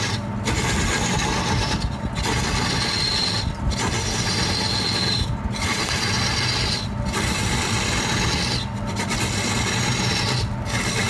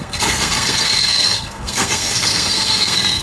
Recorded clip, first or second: first